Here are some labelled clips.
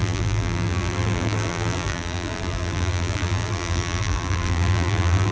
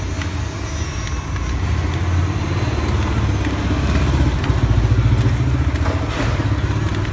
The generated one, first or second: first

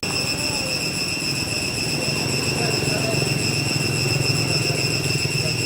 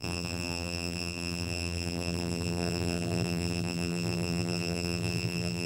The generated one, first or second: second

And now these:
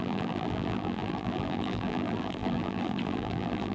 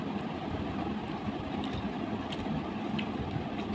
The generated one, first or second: first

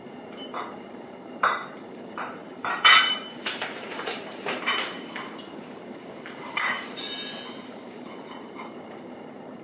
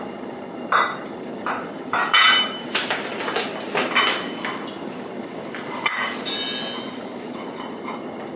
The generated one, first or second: first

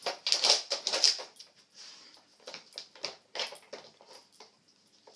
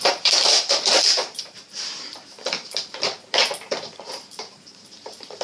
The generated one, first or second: second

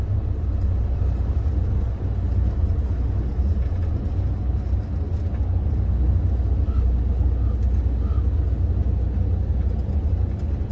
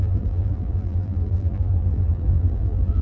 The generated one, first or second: second